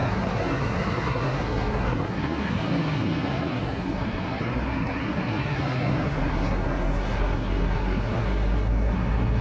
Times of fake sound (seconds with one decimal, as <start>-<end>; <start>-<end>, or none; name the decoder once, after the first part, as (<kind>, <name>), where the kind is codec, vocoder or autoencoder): 0.0-9.4 (codec, SNAC)